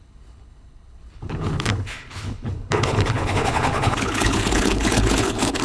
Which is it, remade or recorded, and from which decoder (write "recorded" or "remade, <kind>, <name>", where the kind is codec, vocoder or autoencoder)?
remade, codec, HILCodec